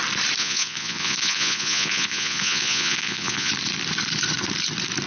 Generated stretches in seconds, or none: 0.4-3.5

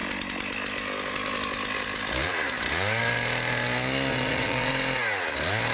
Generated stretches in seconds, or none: 4.1-4.7

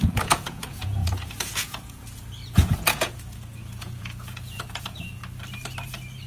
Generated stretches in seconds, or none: 0.0-5.2

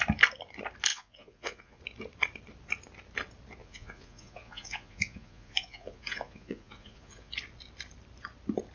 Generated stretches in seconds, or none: 0.9-1.8; 3.6-7.3

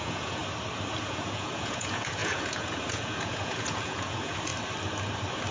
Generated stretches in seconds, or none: 0.0-0.4; 1.0-4.5